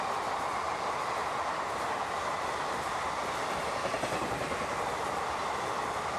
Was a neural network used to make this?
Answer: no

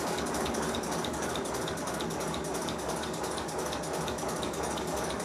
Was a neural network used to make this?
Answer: yes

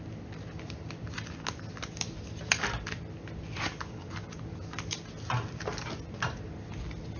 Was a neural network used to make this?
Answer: no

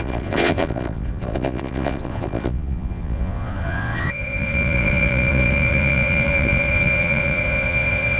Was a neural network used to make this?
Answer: yes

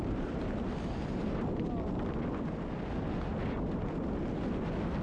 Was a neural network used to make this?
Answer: no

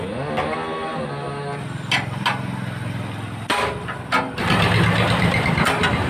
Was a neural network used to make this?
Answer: no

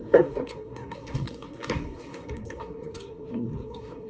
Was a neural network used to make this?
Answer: yes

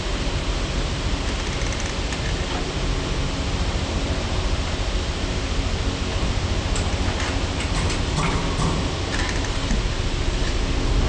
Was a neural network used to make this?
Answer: no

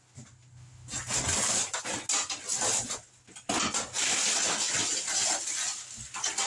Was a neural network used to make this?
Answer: no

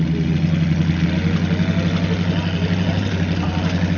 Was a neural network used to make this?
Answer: no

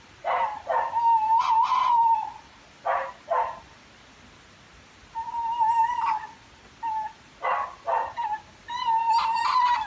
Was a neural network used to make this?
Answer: no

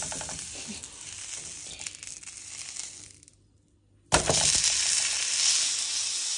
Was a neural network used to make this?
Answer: no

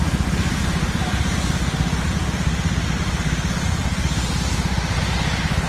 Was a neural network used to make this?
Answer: no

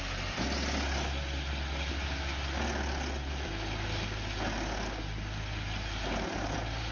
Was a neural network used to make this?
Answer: no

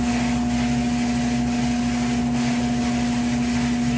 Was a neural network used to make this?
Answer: no